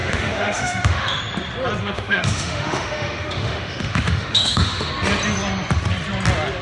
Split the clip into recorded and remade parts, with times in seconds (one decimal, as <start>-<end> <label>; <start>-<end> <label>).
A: 0.0-1.2 remade; 1.2-1.8 recorded; 1.8-4.9 remade; 4.9-6.6 recorded